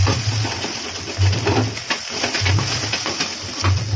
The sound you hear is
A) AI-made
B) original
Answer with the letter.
B